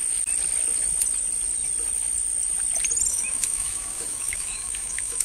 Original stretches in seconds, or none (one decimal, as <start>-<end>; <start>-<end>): 0.0-3.1